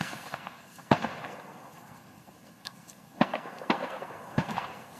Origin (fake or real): fake